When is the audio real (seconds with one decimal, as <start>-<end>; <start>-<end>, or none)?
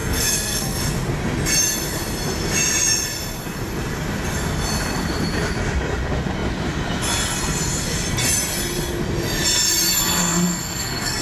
0.9-10.0